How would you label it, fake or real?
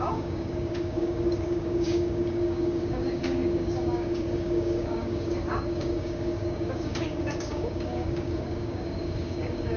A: fake